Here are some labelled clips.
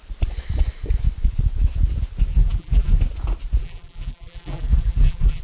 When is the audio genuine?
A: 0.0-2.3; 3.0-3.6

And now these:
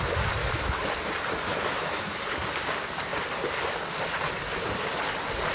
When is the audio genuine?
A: 0.0-0.4; 0.9-1.5; 2.2-5.5

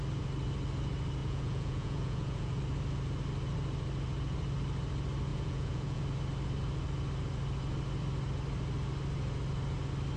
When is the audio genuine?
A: 0.0-1.2; 2.6-5.3; 6.0-10.2

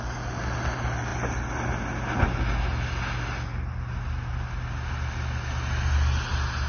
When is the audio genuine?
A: 0.0-6.7

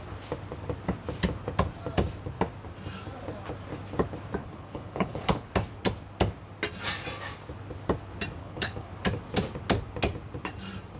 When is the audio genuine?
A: 0.0-4.4; 5.5-8.4; 8.9-11.0